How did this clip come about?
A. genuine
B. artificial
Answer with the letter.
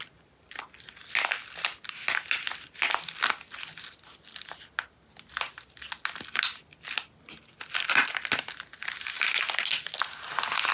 A